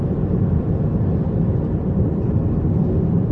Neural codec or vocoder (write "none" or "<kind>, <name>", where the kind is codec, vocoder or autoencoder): vocoder, BigVGAN v2